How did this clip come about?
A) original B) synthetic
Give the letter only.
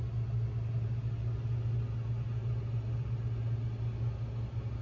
A